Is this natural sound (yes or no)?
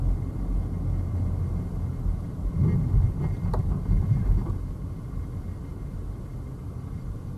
yes